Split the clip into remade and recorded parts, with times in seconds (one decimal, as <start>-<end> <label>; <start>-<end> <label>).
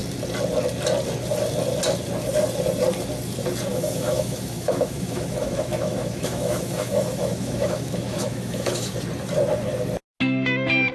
0.0-3.7 recorded; 3.7-8.9 remade; 8.9-10.9 recorded